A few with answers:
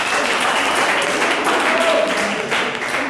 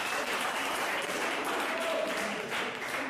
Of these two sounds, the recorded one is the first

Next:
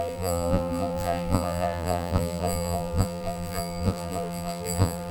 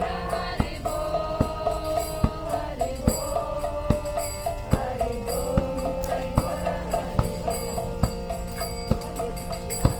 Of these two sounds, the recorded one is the second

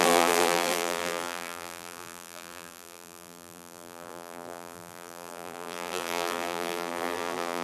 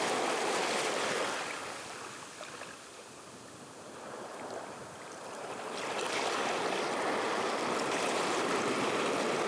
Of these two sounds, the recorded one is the second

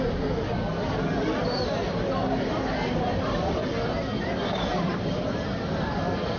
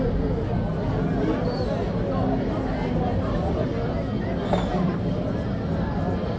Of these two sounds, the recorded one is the second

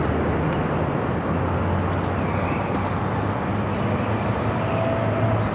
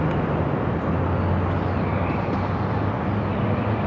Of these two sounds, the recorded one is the first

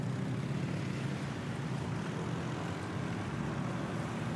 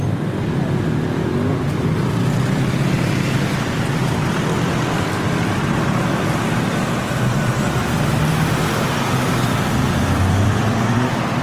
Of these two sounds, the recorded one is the first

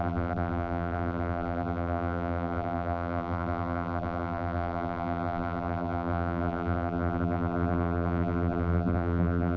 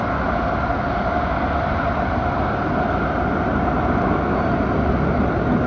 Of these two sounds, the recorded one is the second